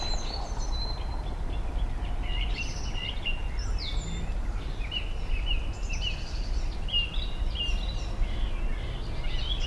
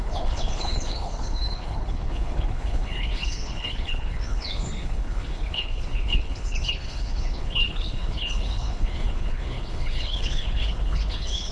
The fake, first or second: second